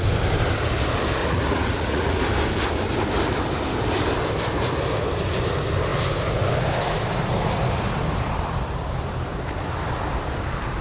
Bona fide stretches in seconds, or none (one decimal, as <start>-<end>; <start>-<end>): 0.0-1.2; 2.2-10.8